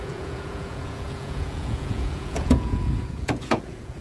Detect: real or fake fake